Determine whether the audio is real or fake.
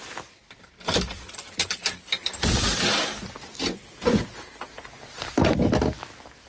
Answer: real